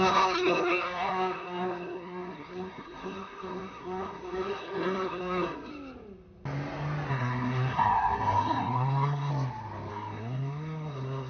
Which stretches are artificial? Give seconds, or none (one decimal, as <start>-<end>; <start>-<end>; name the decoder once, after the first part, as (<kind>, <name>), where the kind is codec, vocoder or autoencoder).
0.0-5.7 (codec, SNAC); 7.1-9.3; 9.9-11.3

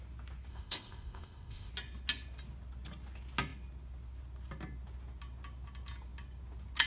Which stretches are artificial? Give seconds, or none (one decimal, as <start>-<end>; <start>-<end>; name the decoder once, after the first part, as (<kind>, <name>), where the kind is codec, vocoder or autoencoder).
0.5-1.7 (codec, ZipCodec)

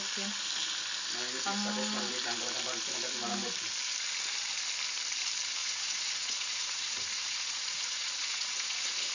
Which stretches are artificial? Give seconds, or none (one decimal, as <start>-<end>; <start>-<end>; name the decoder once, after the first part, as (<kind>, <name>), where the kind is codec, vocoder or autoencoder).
5.6-9.1 (vocoder, Vocos)